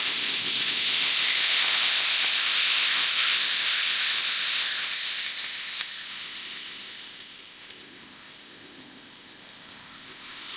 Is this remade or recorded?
remade